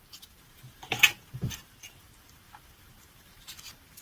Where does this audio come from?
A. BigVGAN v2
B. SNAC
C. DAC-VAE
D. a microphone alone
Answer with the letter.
A